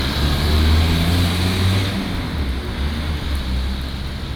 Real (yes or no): yes